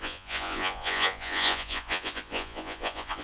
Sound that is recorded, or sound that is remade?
remade